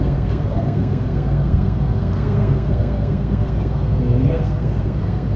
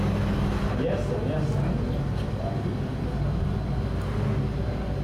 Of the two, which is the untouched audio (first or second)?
second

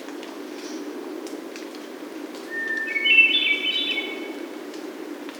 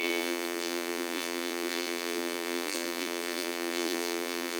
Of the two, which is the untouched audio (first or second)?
first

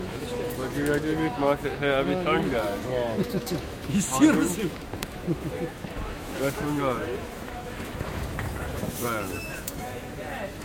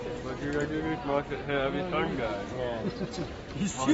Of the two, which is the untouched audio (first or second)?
second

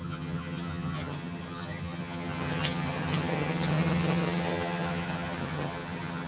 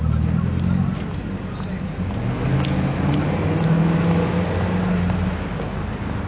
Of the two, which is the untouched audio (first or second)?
second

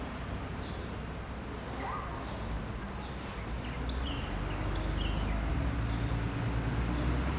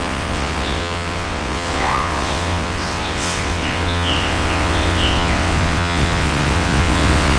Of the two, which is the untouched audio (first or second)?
first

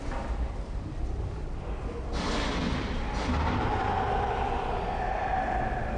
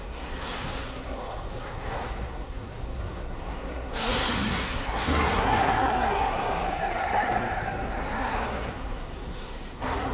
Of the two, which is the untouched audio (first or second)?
first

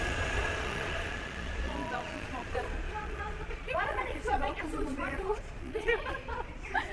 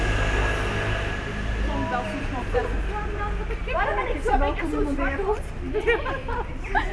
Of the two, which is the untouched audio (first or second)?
second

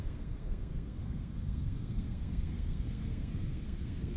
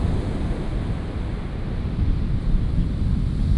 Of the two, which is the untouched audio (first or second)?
second